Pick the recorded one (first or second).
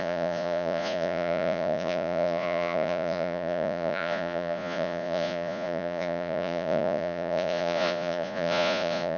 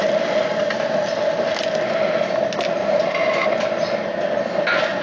second